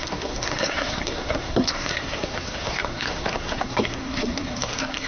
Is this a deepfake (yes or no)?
yes